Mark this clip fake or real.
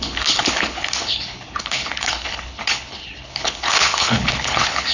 fake